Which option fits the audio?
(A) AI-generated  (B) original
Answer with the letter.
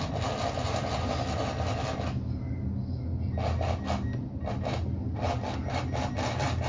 B